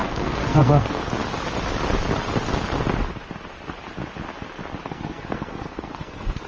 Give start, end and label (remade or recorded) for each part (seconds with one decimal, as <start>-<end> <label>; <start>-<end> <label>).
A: 0.0-1.0 remade; 1.0-4.9 recorded; 4.9-6.5 remade